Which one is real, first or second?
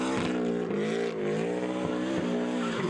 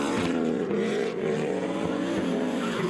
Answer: first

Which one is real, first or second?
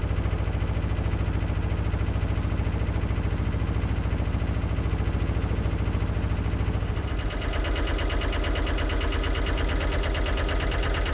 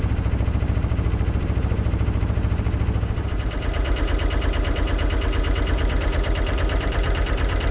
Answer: first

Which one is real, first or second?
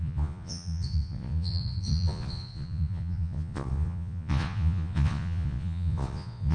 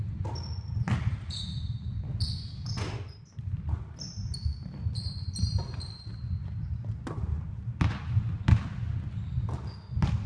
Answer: second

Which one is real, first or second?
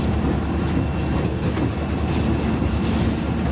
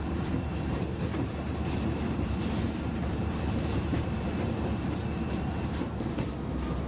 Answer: first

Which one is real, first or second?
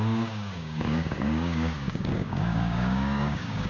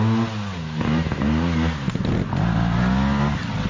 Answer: second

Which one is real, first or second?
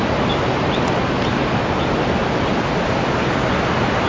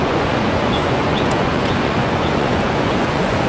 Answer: first